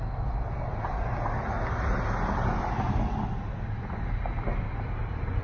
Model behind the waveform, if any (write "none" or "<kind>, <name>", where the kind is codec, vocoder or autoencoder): none